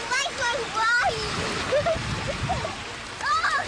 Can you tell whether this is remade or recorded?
remade